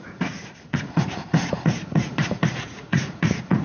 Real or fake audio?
fake